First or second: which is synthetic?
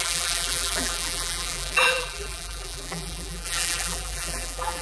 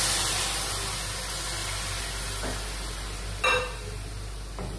first